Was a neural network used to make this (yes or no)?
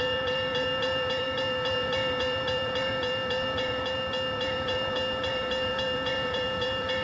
yes